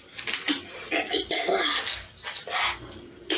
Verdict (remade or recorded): recorded